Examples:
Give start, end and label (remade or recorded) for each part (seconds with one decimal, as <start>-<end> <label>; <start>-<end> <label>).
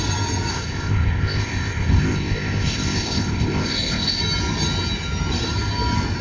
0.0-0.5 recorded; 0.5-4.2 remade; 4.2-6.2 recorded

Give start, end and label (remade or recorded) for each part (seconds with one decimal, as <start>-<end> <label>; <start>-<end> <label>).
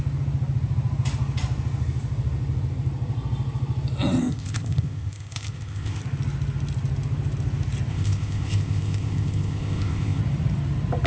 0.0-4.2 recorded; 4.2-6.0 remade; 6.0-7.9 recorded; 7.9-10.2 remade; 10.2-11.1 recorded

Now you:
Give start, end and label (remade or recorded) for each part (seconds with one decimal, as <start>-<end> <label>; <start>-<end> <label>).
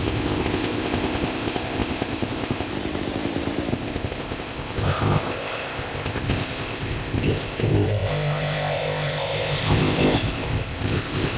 0.0-2.7 remade; 2.7-3.7 recorded; 3.7-11.4 remade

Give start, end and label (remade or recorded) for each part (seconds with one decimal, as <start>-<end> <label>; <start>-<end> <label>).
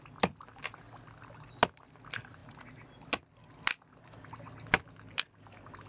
0.0-5.9 recorded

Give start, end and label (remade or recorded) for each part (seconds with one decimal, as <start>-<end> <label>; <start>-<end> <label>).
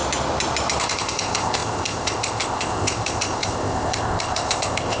0.0-0.8 recorded; 0.8-5.0 remade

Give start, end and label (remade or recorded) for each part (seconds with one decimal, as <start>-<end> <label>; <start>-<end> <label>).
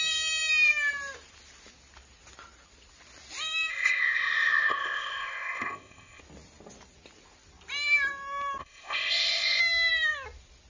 0.0-3.7 recorded; 3.7-6.2 remade; 6.2-8.6 recorded; 8.6-9.6 remade; 9.6-10.7 recorded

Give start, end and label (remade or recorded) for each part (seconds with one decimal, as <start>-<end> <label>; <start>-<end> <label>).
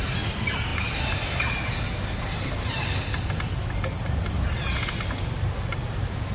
0.0-6.3 recorded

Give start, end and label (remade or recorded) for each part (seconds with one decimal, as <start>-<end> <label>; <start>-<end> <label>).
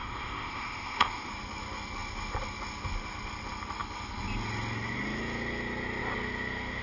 0.0-1.3 remade; 1.3-6.8 recorded